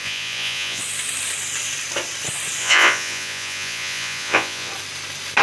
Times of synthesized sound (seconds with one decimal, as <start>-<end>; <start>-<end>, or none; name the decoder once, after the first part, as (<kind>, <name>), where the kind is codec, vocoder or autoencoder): 0.0-0.8 (vocoder, Vocos); 2.6-4.7